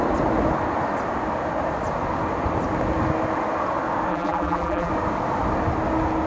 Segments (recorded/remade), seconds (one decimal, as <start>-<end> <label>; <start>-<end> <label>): 0.0-4.1 recorded; 4.1-4.9 remade; 4.9-6.3 recorded